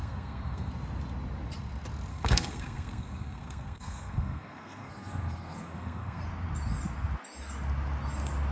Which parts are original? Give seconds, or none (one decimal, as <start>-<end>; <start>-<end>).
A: 0.7-2.1; 6.2-8.5